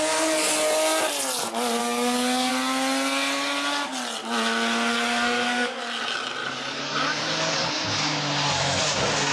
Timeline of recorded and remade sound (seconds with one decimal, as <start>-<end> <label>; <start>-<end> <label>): 0.0-1.8 recorded; 1.8-2.5 remade; 2.5-4.9 recorded; 4.9-5.8 remade; 5.8-6.4 recorded; 6.4-7.7 remade; 7.7-9.3 recorded